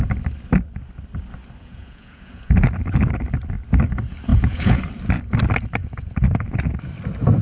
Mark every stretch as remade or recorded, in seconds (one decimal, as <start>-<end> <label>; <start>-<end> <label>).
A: 0.0-1.6 recorded; 1.6-2.7 remade; 2.7-4.3 recorded; 4.3-4.8 remade; 4.8-5.8 recorded; 5.8-6.6 remade; 6.6-7.4 recorded